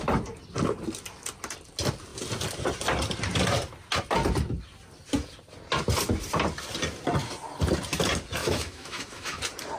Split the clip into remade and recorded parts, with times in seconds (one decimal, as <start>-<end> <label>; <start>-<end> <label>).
0.0-8.4 recorded; 8.4-9.4 remade; 9.4-9.8 recorded